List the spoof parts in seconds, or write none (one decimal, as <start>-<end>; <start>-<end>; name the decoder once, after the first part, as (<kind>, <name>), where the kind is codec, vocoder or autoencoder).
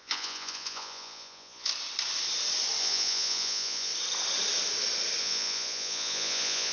0.0-1.7 (vocoder, Vocos); 2.8-3.9; 5.2-6.7